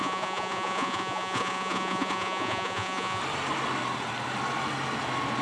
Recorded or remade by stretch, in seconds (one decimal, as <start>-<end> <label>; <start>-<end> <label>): 0.0-3.2 remade; 3.2-5.4 recorded